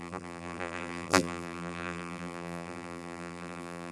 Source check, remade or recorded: remade